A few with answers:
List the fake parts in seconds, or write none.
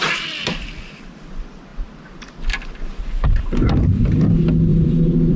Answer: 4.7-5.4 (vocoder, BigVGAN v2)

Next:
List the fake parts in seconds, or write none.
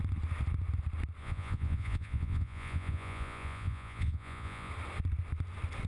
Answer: 1.2-4.7 (vocoder, Vocos)